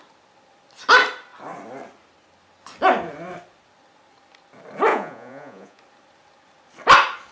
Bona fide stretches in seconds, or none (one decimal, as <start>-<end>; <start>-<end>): 0.0-4.9; 5.8-7.3